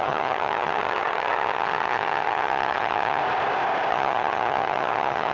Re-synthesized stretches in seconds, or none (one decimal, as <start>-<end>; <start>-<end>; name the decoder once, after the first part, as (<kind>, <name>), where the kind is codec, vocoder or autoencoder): 0.0-3.2 (vocoder, HiFi-GAN); 3.9-5.3